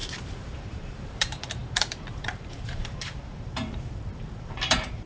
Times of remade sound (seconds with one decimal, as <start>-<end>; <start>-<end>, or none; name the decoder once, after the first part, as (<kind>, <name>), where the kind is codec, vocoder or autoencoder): 0.0-5.1 (vocoder, BigVGAN v2)